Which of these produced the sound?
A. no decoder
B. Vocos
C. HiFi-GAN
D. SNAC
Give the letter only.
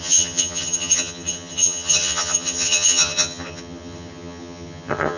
C